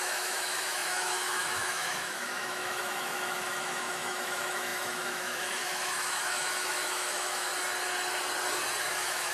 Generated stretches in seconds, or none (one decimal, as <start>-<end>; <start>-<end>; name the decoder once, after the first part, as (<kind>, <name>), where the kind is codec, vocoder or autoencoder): 0.0-7.5 (autoencoder, DAC-VAE); 8.8-9.3